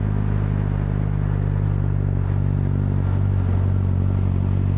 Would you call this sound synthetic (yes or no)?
no